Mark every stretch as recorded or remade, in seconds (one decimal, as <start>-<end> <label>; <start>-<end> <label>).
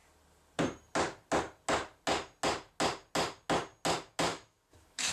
0.0-4.3 recorded; 4.3-5.1 remade